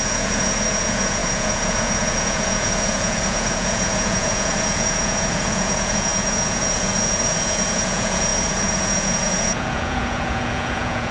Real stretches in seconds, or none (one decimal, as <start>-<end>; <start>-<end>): none